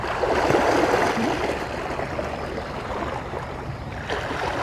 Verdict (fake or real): real